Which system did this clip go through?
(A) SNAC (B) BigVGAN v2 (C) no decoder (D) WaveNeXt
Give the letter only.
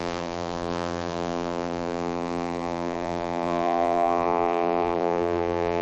B